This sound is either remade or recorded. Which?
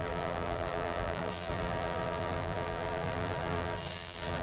remade